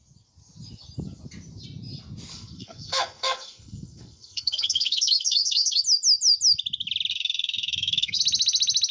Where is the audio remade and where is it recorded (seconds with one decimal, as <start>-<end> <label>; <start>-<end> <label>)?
0.0-2.3 recorded; 2.3-5.8 remade; 5.8-7.1 recorded; 7.1-8.2 remade; 8.2-8.9 recorded